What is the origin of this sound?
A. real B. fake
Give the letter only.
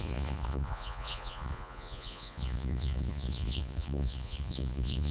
B